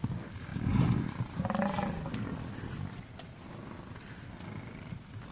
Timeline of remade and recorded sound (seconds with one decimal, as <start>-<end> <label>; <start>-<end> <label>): 0.0-0.5 recorded; 0.5-1.4 remade; 1.4-5.3 recorded

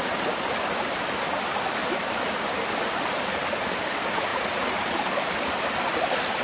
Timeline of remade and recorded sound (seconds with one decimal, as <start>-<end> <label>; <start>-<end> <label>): 0.0-4.3 recorded; 4.3-5.3 remade; 5.3-6.4 recorded

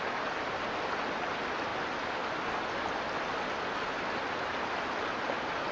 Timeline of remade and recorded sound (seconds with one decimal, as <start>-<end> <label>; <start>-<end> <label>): 0.0-5.7 recorded

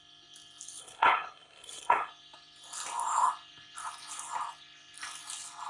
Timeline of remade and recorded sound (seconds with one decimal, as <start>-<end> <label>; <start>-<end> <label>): 0.0-0.8 recorded; 0.8-2.1 remade; 2.1-5.7 recorded

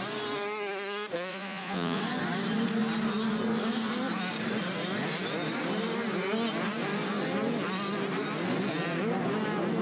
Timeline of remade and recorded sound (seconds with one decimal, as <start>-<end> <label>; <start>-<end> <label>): 0.0-1.3 recorded; 1.3-2.0 remade; 2.0-9.8 recorded

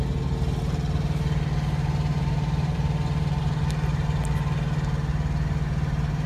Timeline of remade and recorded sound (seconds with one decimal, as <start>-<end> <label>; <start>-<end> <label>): 0.0-2.1 recorded; 2.1-3.4 remade; 3.4-6.3 recorded

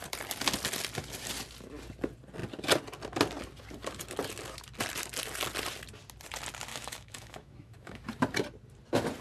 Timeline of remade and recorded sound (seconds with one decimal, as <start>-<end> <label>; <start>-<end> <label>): 0.0-6.7 recorded; 6.7-8.0 remade; 8.0-9.2 recorded